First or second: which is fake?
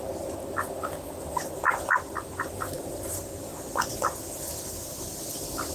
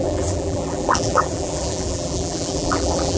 second